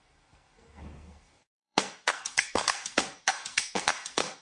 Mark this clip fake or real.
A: fake